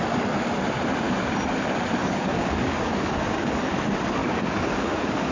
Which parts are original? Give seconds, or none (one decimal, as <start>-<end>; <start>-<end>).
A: 0.0-2.0; 3.6-4.2